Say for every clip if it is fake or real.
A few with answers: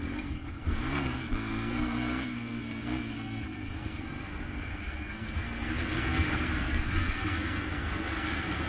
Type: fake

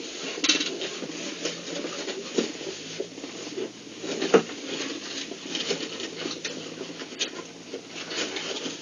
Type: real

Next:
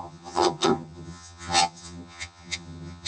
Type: fake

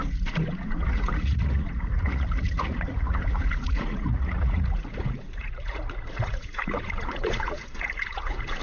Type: fake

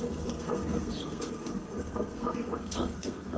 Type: fake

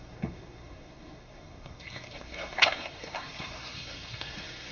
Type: fake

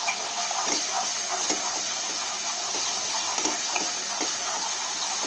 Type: real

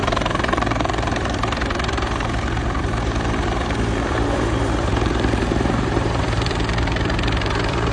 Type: fake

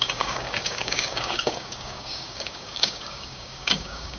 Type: fake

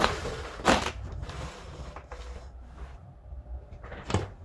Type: fake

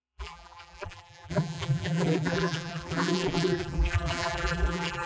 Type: fake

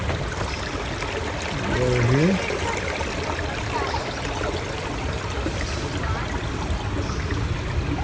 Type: real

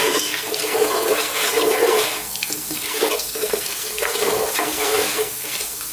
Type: fake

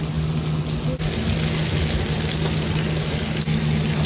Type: real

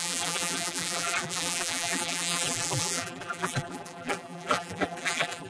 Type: fake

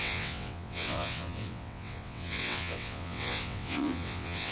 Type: fake